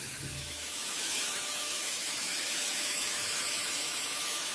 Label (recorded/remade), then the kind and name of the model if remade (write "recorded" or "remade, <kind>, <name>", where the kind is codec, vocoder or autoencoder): remade, autoencoder, DAC-VAE